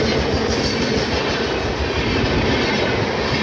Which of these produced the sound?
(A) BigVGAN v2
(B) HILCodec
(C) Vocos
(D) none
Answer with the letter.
D